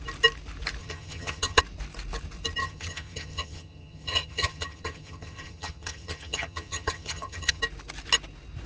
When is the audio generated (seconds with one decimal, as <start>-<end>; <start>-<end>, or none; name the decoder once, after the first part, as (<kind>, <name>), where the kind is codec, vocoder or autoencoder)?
0.8-1.6 (vocoder, HiFi-GAN); 2.6-7.6